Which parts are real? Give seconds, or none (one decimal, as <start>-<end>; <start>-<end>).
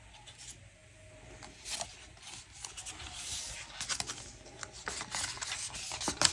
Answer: 0.0-6.3